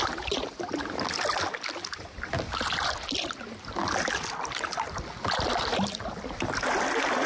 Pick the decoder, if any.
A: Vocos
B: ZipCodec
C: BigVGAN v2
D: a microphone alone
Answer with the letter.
D